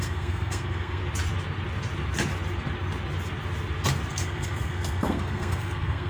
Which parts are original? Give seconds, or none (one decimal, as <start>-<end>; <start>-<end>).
1.0-4.1